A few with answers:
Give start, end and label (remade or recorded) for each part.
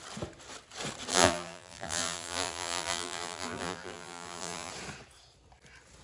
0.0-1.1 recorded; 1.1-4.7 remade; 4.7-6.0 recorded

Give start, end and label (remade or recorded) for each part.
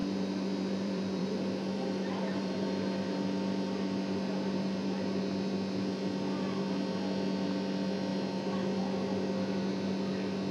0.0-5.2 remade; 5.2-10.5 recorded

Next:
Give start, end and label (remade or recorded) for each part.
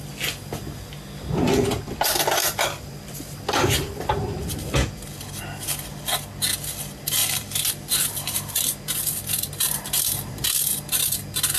0.0-2.4 recorded; 2.4-5.2 remade; 5.2-7.2 recorded; 7.2-9.5 remade; 9.5-11.6 recorded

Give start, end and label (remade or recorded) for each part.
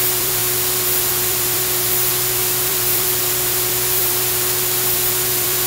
0.0-0.4 remade; 0.4-1.1 recorded; 1.1-5.7 remade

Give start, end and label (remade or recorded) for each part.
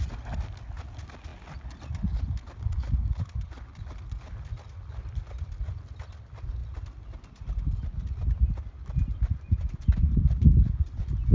0.0-11.3 recorded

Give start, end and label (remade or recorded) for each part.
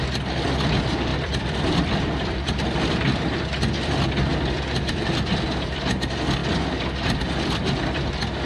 0.0-1.1 recorded; 1.1-3.9 remade; 3.9-4.3 recorded; 4.3-5.8 remade; 5.8-6.4 recorded; 6.4-8.1 remade; 8.1-8.5 recorded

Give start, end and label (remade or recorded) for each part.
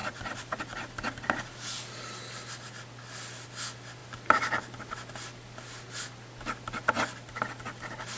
0.0-0.6 remade; 0.6-8.2 recorded